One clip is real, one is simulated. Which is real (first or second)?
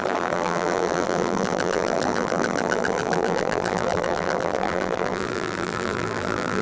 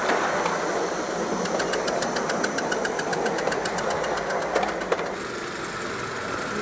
second